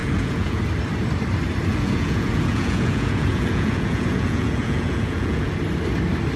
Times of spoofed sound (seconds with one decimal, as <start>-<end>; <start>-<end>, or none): 0.0-0.6; 1.7-5.5